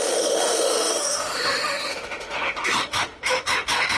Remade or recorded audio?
remade